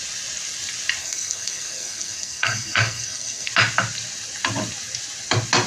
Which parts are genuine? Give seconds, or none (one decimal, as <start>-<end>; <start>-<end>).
0.0-1.0; 3.5-5.7

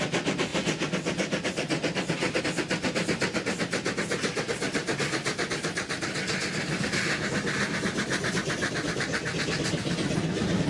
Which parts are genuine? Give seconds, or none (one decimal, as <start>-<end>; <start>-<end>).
0.0-10.7

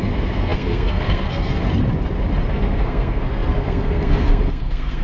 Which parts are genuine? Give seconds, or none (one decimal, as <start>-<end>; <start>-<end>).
1.6-2.5

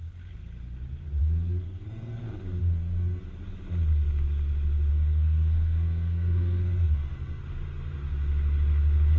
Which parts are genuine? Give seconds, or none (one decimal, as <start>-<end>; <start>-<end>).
0.0-1.2; 2.2-2.6; 3.2-4.9; 7.4-9.2

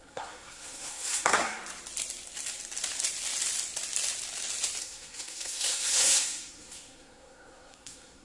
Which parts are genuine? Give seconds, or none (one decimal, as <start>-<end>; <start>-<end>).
1.6-4.8

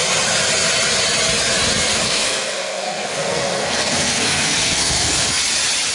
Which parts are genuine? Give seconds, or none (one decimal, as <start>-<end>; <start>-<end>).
0.0-1.9; 5.4-5.9

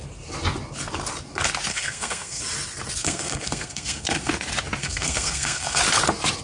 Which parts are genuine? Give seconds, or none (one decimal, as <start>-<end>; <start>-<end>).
0.0-1.7; 2.4-3.0; 4.3-4.8; 5.8-6.4